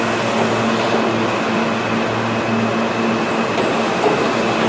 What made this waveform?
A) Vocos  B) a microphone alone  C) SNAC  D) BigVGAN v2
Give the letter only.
B